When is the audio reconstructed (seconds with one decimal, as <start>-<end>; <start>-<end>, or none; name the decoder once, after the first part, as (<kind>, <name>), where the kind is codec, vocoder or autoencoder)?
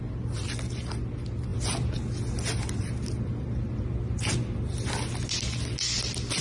none